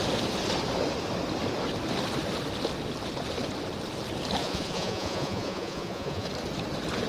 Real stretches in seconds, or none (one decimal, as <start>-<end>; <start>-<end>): 0.0-4.4; 6.3-7.1